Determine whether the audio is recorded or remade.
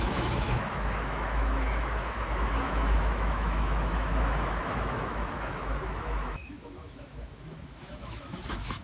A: remade